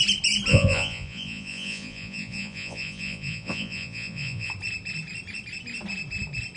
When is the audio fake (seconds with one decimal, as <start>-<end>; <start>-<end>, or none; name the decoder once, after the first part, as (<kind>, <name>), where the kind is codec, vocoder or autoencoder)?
0.5-4.5 (vocoder, Vocos)